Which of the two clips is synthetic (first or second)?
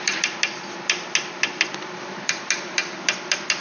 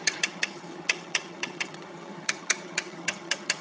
second